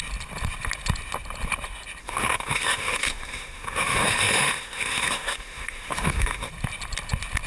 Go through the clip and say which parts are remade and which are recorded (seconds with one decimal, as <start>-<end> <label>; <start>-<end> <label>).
0.0-2.0 recorded; 2.0-6.5 remade; 6.5-7.5 recorded